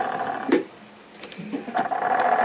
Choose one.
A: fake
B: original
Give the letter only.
B